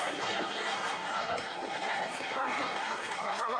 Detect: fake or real fake